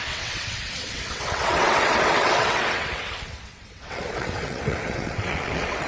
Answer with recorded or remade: remade